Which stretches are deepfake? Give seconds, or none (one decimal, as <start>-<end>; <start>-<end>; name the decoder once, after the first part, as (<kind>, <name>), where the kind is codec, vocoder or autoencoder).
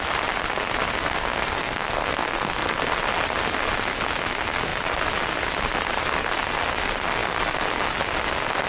0.9-2.9 (codec, SNAC)